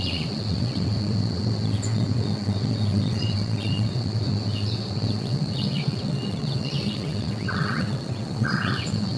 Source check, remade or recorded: remade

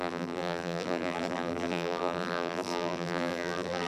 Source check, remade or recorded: remade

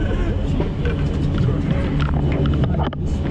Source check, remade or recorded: recorded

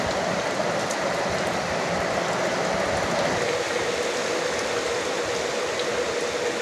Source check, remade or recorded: recorded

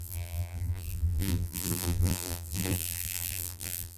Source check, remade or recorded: remade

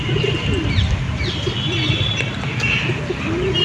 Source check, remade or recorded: recorded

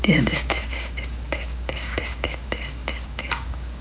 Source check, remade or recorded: remade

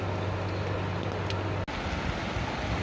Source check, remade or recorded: recorded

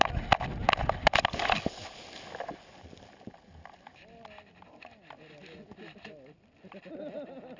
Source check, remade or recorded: recorded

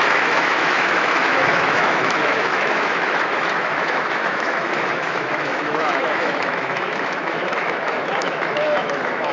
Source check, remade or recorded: remade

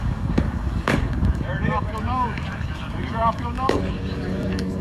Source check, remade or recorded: remade